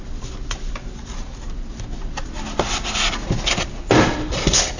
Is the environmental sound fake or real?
real